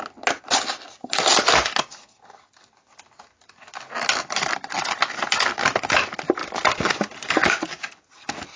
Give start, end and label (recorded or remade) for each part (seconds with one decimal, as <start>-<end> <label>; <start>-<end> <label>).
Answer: 0.0-8.6 recorded